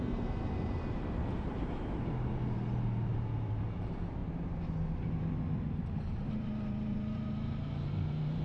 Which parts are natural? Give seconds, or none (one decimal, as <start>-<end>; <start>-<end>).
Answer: 4.2-6.1